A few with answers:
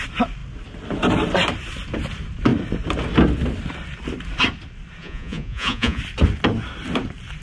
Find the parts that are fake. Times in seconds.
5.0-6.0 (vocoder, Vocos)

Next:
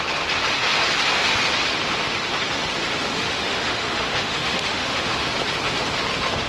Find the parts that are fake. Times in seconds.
3.1-5.3 (autoencoder, DAC-VAE)

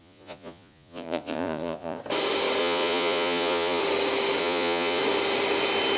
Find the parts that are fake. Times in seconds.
0.0-2.0 (vocoder, Vocos); 2.6-3.8; 4.4-5.0

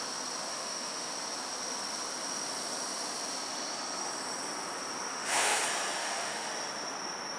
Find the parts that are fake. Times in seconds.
0.5-1.1 (autoencoder, DAC-VAE); 5.1-5.6; 6.0-6.5